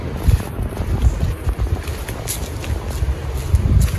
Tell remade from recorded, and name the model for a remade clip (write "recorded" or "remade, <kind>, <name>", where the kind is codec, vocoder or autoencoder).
recorded